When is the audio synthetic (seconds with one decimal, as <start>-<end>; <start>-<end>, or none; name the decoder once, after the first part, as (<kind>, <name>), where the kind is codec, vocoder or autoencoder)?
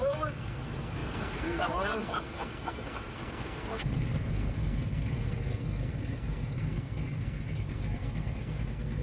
0.0-9.0 (codec, SNAC)